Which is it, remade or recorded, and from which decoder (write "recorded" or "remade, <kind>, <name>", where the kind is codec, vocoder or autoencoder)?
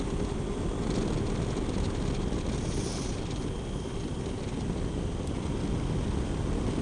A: recorded